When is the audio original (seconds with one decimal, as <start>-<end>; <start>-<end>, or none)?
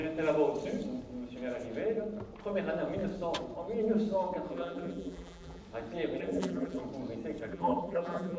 0.0-4.5; 5.6-6.2; 6.8-7.5